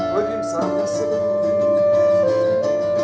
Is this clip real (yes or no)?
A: yes